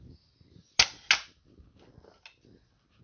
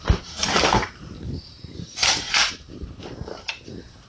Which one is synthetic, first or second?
second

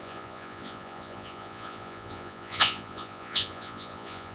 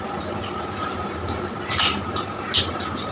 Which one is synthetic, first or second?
first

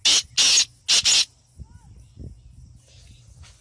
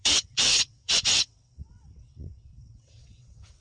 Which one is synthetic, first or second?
second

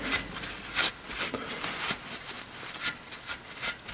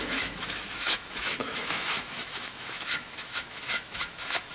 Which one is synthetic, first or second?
second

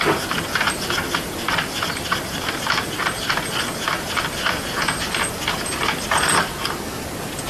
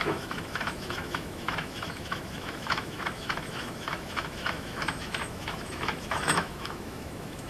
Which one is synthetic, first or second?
second